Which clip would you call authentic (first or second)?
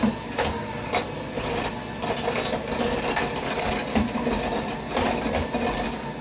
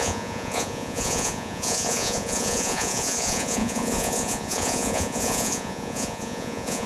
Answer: first